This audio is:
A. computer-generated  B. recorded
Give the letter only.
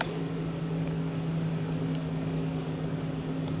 A